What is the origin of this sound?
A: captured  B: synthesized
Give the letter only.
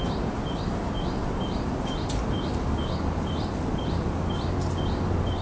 A